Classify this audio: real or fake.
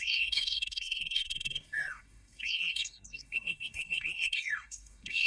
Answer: fake